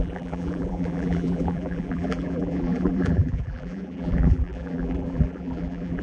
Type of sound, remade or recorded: remade